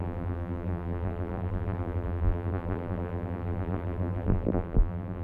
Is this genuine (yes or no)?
no